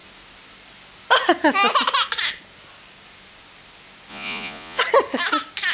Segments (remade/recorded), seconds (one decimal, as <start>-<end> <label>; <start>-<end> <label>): 0.0-4.1 recorded; 4.1-4.8 remade; 4.8-5.7 recorded